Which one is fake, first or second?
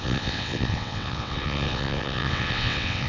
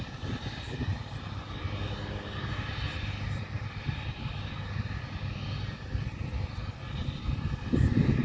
first